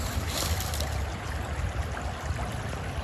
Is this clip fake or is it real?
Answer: real